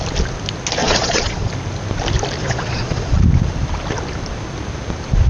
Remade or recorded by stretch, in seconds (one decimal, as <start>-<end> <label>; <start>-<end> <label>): 0.0-0.8 recorded; 0.8-1.5 remade; 1.5-2.4 recorded; 2.4-3.2 remade; 3.2-5.3 recorded